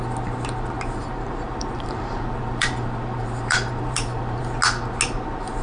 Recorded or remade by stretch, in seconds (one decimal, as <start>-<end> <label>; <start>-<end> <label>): 0.0-1.0 recorded; 1.0-4.4 remade; 4.4-5.6 recorded